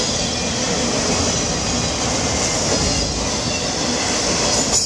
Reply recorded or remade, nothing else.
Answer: recorded